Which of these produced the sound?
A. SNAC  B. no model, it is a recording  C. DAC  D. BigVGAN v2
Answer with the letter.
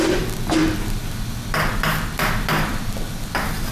B